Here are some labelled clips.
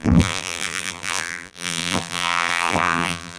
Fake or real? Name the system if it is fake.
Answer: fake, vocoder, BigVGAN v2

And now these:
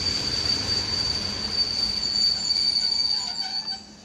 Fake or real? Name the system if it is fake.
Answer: real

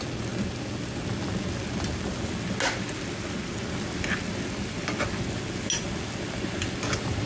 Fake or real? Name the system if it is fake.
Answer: real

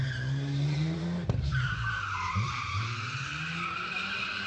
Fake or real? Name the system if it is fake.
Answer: fake, vocoder, BigVGAN v2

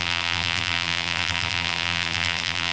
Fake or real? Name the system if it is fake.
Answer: fake, vocoder, BigVGAN v2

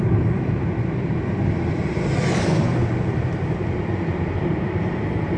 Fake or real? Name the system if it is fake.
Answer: fake, vocoder, BigVGAN v2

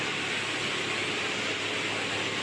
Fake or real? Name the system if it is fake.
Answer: real